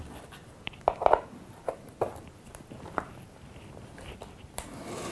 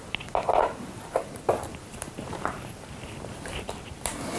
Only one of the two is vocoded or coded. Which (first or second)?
second